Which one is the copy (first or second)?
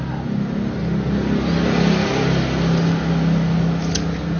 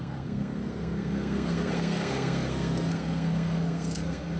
second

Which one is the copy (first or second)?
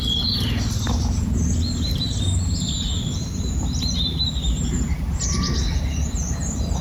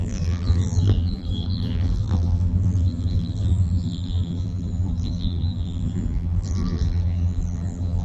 second